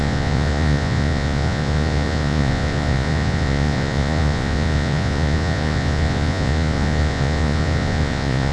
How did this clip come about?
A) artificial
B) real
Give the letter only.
A